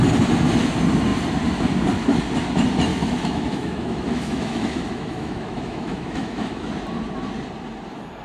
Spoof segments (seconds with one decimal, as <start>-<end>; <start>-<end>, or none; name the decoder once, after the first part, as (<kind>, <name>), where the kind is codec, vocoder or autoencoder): 2.9-6.7 (autoencoder, DAC-VAE)